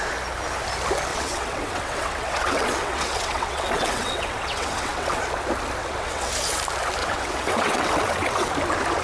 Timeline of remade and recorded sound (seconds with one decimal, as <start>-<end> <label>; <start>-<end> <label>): 0.0-1.1 recorded; 1.1-5.2 remade; 5.2-5.8 recorded; 5.8-6.3 remade; 6.3-7.0 recorded; 7.0-8.5 remade; 8.5-9.0 recorded